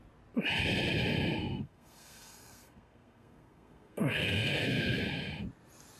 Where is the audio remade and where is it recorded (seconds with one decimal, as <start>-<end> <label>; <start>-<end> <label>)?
0.0-1.4 recorded; 1.4-5.0 remade; 5.0-6.0 recorded